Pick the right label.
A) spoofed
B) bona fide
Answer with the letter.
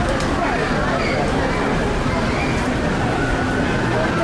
B